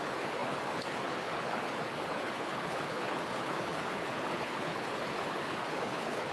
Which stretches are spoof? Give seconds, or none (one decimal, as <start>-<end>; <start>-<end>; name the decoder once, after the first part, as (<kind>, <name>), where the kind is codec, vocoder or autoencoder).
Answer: 0.0-6.3 (codec, HILCodec)